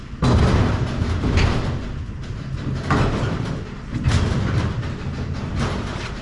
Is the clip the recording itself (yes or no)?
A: yes